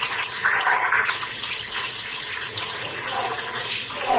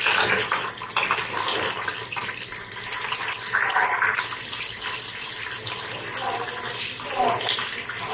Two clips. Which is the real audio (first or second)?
second